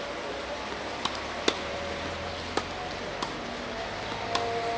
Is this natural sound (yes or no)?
yes